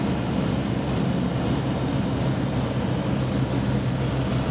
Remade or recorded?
recorded